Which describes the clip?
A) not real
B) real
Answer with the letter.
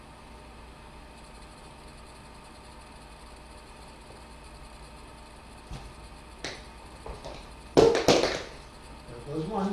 B